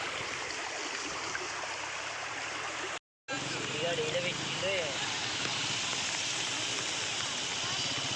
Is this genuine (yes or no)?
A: yes